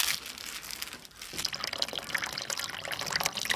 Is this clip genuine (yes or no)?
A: yes